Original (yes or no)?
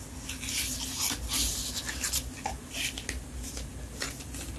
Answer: yes